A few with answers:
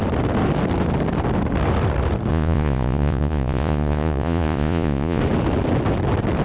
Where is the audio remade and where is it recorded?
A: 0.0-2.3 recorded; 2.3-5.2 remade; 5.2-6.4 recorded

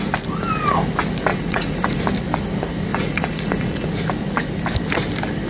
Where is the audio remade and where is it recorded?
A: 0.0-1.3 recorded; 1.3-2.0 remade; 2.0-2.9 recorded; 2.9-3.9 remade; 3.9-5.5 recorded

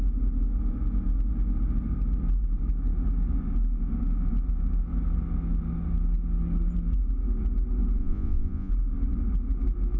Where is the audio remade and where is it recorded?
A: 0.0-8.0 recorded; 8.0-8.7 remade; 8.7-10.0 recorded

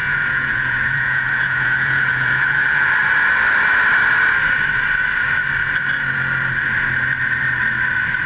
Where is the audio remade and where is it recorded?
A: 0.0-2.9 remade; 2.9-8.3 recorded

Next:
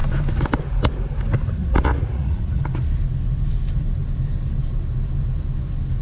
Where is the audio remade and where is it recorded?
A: 0.0-1.6 recorded; 1.6-2.6 remade; 2.6-6.0 recorded

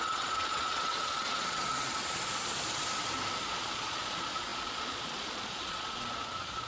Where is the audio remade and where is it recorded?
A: 0.0-2.0 remade; 2.0-3.4 recorded; 3.4-6.7 remade

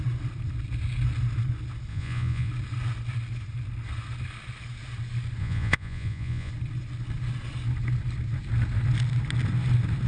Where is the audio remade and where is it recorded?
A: 0.0-1.9 recorded; 1.9-2.5 remade; 2.5-5.4 recorded; 5.4-6.5 remade; 6.5-10.1 recorded